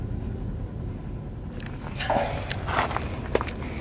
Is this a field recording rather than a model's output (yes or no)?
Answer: yes